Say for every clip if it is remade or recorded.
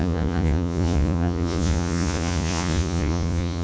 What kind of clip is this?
remade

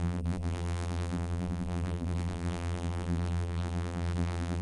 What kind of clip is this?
remade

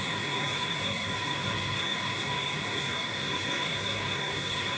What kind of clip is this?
remade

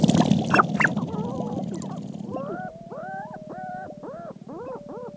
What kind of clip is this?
recorded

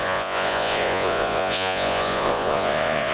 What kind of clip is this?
remade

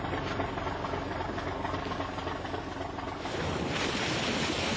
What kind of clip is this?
recorded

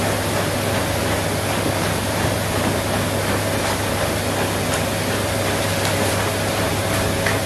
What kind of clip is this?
recorded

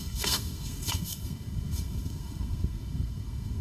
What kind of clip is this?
remade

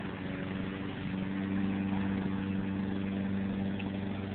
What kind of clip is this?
recorded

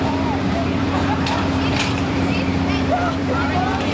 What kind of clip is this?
remade